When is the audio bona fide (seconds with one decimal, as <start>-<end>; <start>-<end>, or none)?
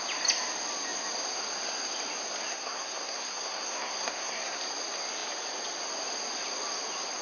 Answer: 0.0-2.5; 4.6-7.2